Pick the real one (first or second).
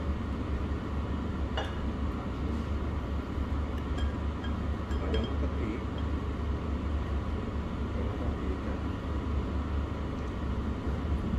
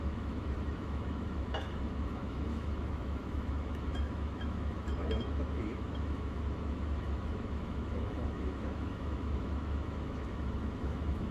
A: first